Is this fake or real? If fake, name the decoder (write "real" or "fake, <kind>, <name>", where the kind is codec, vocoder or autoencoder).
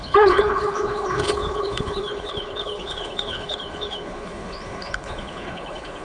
fake, codec, HILCodec